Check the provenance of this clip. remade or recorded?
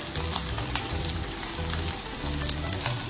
remade